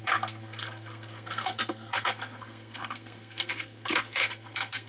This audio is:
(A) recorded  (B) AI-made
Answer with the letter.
B